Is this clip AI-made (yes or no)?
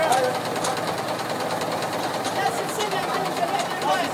no